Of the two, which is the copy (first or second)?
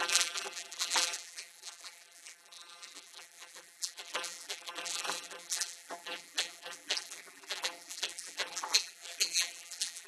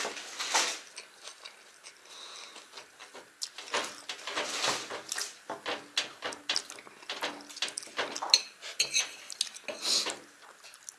first